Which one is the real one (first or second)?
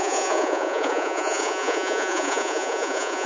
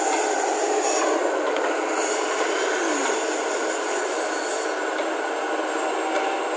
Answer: second